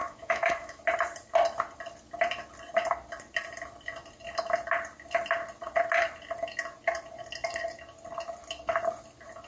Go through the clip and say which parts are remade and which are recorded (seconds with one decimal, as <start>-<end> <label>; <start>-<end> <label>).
0.0-0.8 remade; 0.8-9.5 recorded